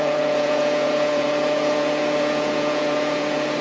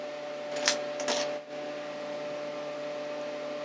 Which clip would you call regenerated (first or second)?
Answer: first